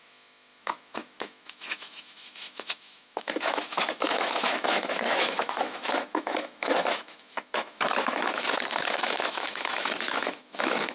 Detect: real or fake fake